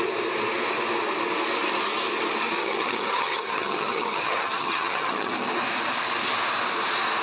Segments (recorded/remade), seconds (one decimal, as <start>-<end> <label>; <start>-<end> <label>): 0.0-2.6 recorded; 2.6-5.3 remade; 5.3-7.2 recorded